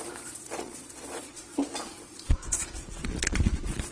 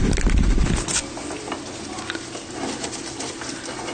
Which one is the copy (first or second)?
first